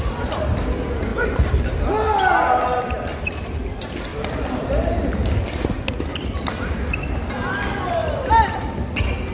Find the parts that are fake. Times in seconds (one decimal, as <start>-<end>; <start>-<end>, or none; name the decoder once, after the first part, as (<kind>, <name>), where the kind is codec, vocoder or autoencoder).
4.1-5.1 (vocoder, BigVGAN v2); 8.0-9.3

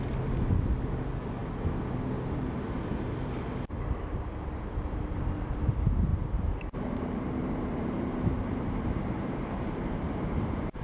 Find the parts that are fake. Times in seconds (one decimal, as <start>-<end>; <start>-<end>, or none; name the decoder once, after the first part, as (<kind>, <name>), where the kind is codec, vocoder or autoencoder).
6.1-10.8 (vocoder, BigVGAN v2)

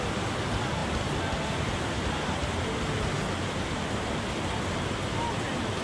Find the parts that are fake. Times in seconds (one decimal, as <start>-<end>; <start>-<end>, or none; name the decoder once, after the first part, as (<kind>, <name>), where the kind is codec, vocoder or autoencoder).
none

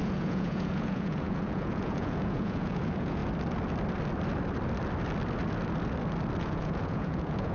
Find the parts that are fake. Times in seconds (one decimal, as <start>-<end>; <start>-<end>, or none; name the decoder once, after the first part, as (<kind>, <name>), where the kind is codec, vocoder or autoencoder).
0.0-3.2 (vocoder, Vocos); 6.4-7.5

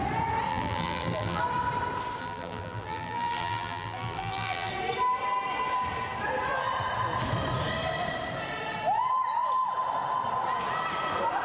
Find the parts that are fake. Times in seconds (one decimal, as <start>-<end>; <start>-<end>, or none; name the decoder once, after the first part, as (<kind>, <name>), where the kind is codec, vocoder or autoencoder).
0.5-1.4 (vocoder, BigVGAN v2); 2.2-4.7

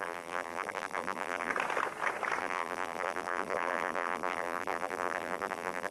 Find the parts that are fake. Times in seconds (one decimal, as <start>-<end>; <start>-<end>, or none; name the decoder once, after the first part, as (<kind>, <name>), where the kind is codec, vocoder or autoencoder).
0.0-1.5 (vocoder, BigVGAN v2); 2.4-5.9

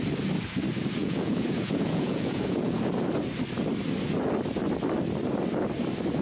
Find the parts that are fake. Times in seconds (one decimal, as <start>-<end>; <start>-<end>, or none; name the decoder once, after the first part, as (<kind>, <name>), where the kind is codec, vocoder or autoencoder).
1.0-2.8 (vocoder, Vocos)